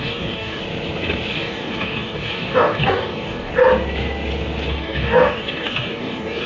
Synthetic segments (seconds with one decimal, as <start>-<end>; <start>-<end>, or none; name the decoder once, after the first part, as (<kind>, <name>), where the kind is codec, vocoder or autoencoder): 0.0-0.6 (codec, DAC); 1.3-3.5; 4.7-6.5